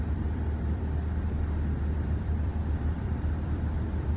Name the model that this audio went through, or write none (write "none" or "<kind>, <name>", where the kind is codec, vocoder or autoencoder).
vocoder, BigVGAN v2